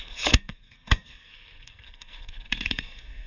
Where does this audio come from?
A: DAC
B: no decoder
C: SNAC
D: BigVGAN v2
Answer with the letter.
C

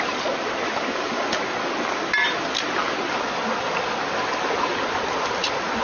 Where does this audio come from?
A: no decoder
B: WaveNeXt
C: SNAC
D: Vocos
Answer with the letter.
A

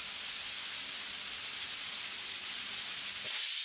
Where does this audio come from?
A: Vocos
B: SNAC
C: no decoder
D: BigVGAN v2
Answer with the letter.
C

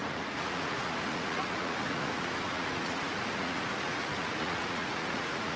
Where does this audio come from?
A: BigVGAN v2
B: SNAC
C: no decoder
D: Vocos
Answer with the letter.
D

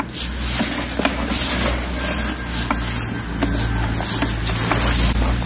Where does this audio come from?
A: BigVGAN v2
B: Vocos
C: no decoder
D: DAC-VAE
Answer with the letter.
C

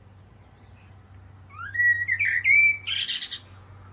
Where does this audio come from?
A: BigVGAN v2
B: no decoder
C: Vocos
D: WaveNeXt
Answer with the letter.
B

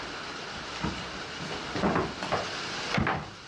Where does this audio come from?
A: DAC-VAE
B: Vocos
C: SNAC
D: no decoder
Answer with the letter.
D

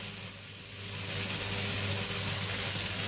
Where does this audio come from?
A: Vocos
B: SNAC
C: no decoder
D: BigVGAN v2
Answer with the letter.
C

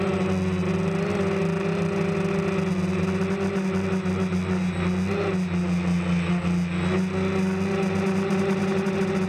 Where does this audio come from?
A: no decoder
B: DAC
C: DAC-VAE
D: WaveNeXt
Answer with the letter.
A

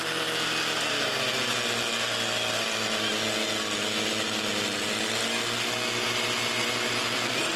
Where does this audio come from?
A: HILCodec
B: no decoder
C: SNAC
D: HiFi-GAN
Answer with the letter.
B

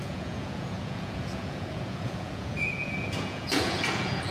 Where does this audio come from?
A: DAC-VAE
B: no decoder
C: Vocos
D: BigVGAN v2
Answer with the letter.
C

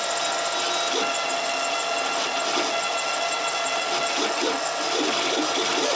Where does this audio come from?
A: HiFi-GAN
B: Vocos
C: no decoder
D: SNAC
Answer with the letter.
C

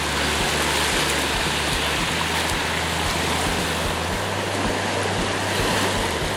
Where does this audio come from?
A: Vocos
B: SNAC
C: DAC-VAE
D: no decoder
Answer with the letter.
D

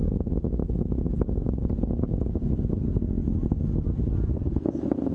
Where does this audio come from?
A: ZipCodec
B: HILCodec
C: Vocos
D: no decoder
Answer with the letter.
D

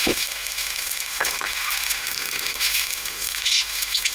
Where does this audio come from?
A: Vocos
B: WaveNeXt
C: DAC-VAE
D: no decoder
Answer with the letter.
C